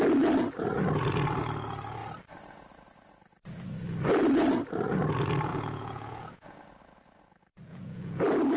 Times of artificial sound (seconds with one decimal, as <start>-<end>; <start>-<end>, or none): 5.5-6.6; 7.7-8.2